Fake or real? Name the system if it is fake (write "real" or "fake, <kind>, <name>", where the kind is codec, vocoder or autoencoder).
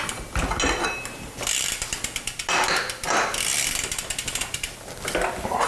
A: real